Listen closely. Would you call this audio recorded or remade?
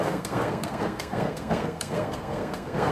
remade